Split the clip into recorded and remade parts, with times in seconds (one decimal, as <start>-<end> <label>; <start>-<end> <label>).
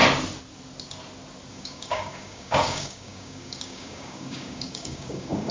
0.0-1.5 recorded; 1.5-5.5 remade